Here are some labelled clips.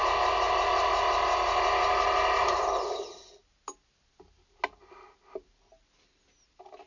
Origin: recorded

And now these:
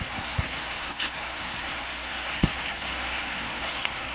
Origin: remade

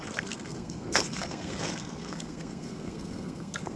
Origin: remade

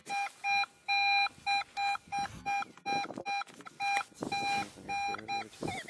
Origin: recorded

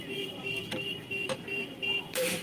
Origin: remade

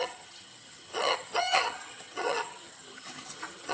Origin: remade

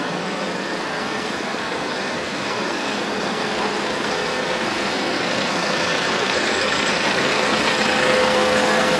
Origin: remade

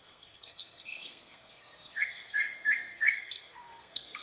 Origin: remade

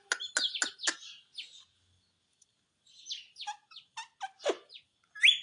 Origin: recorded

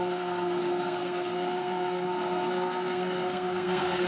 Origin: remade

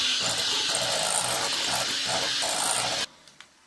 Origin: recorded